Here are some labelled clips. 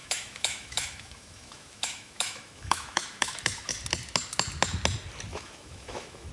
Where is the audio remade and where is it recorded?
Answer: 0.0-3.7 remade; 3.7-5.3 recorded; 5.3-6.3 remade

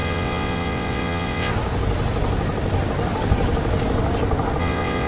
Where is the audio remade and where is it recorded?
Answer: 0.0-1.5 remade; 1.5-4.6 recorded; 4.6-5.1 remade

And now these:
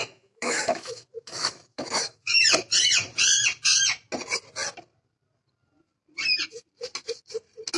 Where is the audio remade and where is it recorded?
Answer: 0.0-2.4 remade; 2.4-7.8 recorded

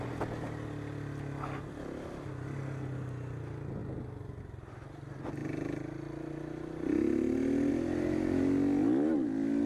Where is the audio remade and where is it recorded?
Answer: 0.0-9.7 recorded

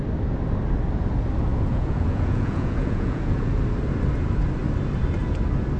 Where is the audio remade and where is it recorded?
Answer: 0.0-1.5 recorded; 1.5-3.6 remade; 3.6-5.8 recorded